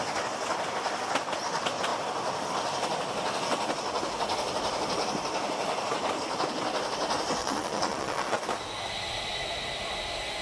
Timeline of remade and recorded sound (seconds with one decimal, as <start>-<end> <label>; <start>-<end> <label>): 0.0-7.4 recorded; 7.4-8.4 remade; 8.4-10.4 recorded